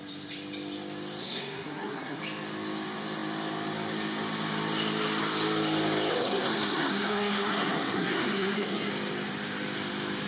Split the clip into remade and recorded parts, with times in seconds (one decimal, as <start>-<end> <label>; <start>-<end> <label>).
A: 0.0-1.2 recorded; 1.2-2.2 remade; 2.2-6.1 recorded; 6.1-8.9 remade; 8.9-10.3 recorded